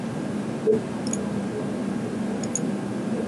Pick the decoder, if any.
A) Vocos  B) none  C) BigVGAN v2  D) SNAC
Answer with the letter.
B